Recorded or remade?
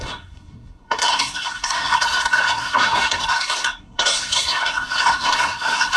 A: remade